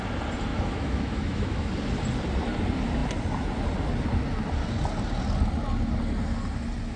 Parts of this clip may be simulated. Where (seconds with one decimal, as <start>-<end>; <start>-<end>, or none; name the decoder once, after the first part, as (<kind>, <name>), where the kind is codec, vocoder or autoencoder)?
0.5-1.7 (autoencoder, DAC-VAE)